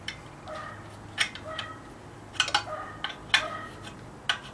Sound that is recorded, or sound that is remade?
recorded